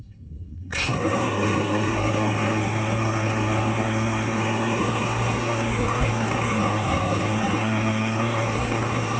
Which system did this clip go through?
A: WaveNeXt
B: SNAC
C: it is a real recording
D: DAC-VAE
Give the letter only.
B